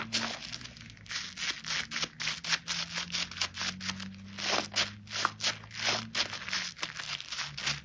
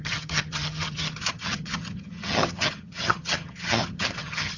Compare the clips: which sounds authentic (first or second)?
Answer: first